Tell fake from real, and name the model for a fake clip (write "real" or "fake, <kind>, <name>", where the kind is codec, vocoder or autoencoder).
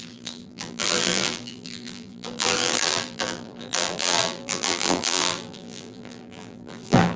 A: fake, vocoder, BigVGAN v2